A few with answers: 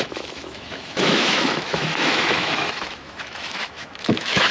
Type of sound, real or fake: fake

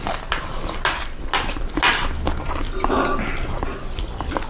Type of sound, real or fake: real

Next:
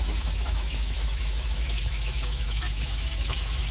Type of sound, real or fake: fake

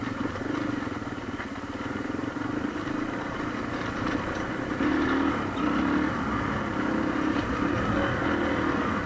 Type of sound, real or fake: real